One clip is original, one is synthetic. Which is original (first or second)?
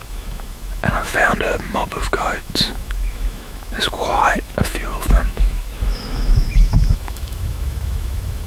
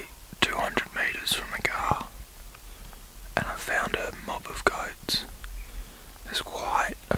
second